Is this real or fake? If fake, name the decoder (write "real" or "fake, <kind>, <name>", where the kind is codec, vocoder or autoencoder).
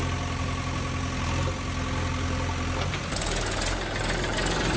real